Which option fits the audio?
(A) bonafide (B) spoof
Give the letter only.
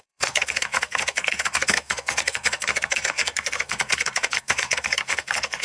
B